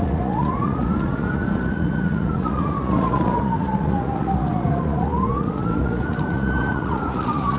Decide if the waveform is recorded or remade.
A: remade